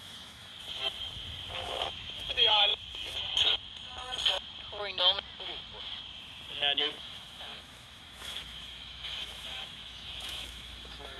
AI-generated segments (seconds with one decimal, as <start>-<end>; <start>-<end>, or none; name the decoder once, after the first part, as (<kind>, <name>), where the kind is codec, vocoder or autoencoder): 0.0-0.5 (autoencoder, DAC-VAE); 1.5-2.7; 6.8-11.2